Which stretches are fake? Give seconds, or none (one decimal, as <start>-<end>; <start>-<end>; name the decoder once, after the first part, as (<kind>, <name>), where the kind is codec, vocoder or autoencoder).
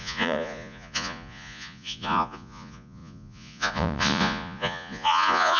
0.0-5.6 (vocoder, Vocos)